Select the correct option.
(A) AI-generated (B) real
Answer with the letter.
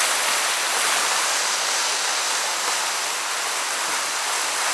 B